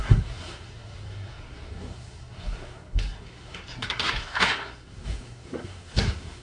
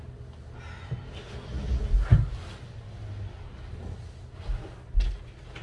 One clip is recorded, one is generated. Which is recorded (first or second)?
second